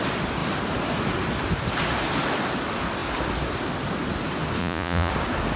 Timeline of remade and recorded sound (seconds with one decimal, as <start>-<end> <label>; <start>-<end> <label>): 0.0-4.6 recorded; 4.6-5.1 remade; 5.1-5.6 recorded